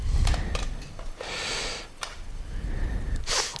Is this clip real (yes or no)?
yes